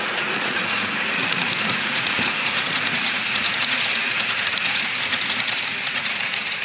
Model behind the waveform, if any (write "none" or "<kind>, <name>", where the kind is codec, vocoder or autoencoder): vocoder, Vocos